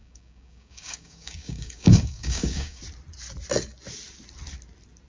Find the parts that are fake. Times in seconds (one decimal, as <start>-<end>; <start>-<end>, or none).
0.0-2.8